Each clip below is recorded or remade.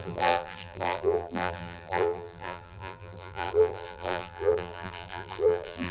remade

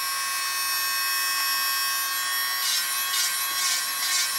recorded